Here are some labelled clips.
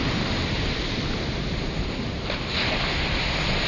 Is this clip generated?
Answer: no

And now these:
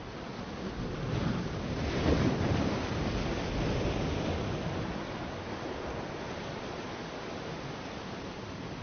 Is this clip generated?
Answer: no